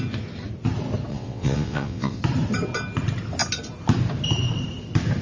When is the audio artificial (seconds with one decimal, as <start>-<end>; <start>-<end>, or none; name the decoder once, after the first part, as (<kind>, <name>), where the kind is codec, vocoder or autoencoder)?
1.1-2.2 (vocoder, WaveNeXt)